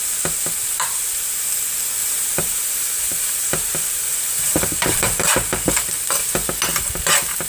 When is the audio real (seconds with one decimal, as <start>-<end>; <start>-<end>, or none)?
0.0-2.0; 5.3-7.5